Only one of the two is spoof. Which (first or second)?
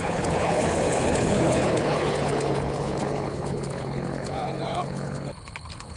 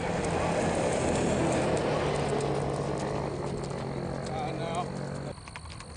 first